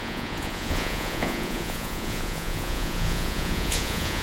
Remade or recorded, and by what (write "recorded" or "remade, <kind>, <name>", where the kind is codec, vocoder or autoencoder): remade, vocoder, Vocos